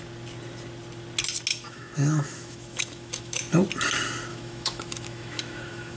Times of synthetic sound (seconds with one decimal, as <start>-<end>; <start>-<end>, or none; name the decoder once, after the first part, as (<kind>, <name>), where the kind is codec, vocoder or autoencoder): 1.5-3.4 (autoencoder, DAC-VAE); 4.3-6.0